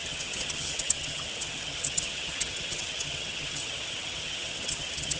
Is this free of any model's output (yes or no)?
no